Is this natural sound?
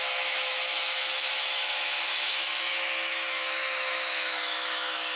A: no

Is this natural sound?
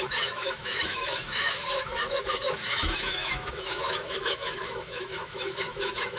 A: no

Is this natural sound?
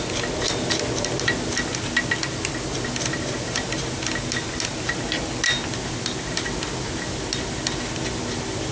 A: yes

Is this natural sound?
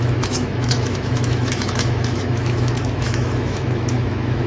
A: no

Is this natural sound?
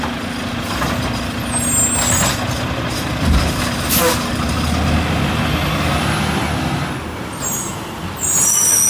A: yes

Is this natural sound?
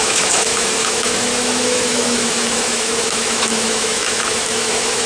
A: no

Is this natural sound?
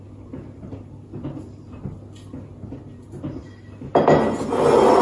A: yes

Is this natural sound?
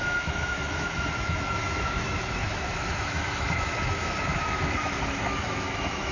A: no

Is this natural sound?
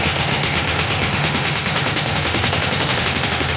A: no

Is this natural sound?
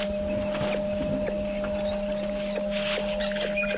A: yes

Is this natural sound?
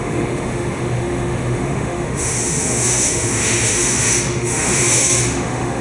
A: no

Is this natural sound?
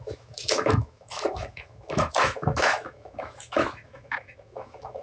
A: no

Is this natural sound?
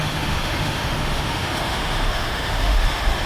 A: no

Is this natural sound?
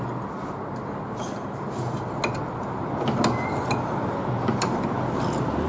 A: yes